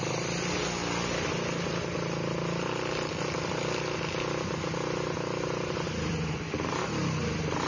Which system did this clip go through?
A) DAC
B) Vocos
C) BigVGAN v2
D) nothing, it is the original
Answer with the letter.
D